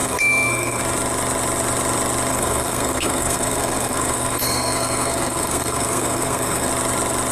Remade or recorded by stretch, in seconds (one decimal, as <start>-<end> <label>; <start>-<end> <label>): 0.0-0.8 remade; 0.8-2.3 recorded; 2.3-6.7 remade; 6.7-7.3 recorded